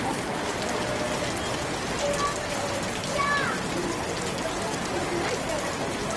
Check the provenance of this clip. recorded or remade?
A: recorded